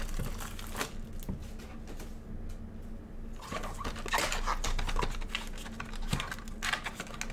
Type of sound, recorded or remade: recorded